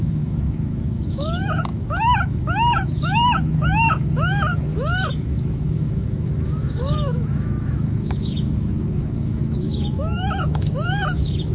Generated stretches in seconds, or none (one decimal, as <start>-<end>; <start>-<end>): 0.0-11.5